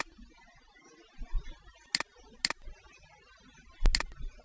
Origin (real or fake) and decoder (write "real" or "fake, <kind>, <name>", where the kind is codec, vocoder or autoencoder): real